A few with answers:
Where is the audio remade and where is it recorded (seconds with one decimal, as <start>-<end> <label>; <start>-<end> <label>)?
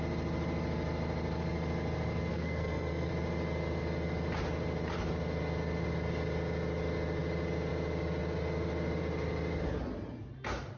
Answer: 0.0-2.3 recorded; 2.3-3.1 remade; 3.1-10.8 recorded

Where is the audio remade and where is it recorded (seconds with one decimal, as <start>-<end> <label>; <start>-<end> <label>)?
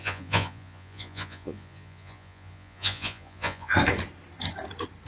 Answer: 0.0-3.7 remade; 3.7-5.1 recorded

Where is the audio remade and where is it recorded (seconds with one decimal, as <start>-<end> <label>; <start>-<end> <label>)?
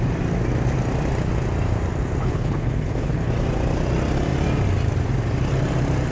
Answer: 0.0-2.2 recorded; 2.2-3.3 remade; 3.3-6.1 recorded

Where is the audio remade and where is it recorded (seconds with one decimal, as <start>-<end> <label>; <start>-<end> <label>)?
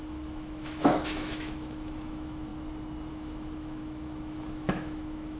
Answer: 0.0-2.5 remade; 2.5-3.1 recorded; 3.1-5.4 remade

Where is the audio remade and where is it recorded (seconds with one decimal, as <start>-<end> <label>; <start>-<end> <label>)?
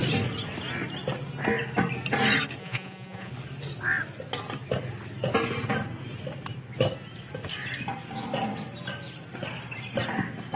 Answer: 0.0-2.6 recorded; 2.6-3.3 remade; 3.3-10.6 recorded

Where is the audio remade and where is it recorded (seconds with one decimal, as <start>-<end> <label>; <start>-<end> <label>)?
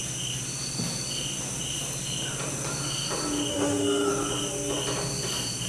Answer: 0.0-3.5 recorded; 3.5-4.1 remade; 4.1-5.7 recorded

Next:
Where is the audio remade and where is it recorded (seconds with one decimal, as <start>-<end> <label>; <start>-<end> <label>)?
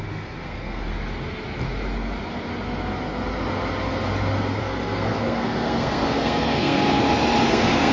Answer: 0.0-0.9 remade; 0.9-4.6 recorded; 4.6-7.0 remade; 7.0-7.5 recorded; 7.5-7.9 remade